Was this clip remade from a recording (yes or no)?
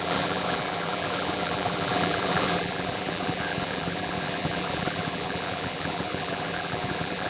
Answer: yes